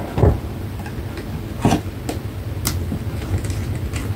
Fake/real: real